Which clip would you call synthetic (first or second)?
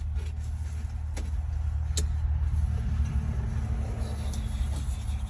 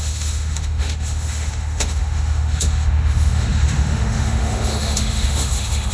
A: second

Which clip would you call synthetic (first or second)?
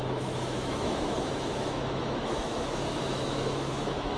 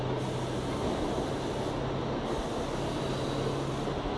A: first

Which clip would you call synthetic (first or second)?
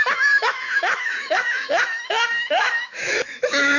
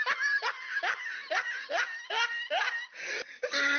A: first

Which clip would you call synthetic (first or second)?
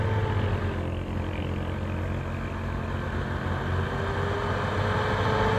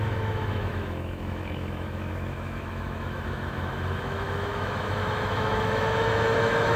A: second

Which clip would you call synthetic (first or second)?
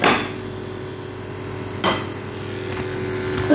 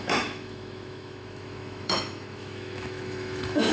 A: second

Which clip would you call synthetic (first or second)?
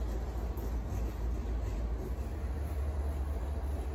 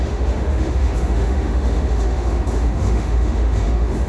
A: second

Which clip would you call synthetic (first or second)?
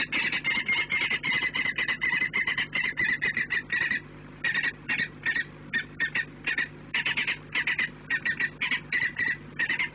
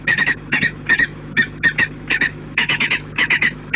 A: second